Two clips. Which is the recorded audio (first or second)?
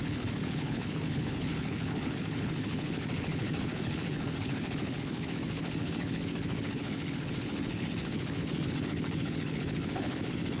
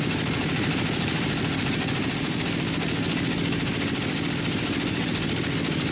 second